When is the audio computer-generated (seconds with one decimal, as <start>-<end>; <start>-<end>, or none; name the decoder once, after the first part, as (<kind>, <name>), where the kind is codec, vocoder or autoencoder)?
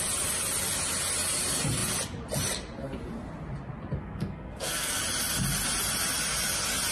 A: 4.0-5.0 (codec, SNAC)